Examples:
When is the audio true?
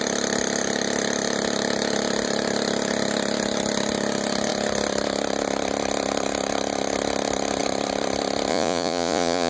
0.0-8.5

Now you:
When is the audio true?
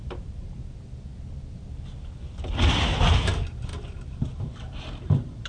1.1-3.3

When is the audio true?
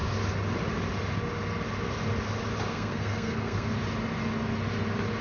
0.0-2.7; 3.7-5.2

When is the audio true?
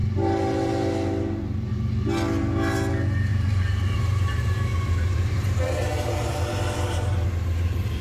0.0-3.3; 7.3-8.0